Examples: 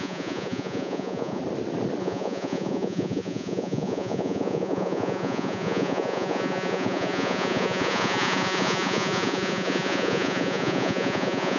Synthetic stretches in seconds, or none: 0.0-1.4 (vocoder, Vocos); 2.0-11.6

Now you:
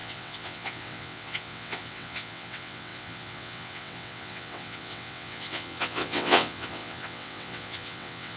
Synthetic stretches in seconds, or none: 0.0-8.4 (vocoder, WaveNeXt)

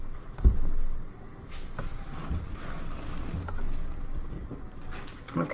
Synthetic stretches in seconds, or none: none

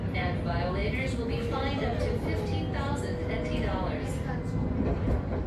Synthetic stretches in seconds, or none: none

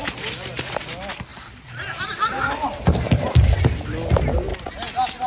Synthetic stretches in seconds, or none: 1.3-3.6 (vocoder, BigVGAN v2); 4.5-5.3

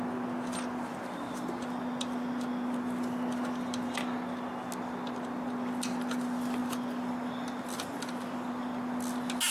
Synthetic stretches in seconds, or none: none

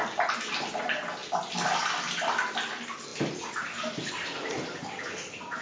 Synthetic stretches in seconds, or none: none

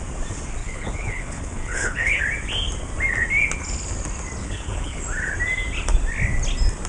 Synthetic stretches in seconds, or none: 0.6-2.2 (codec, HILCodec); 4.4-5.0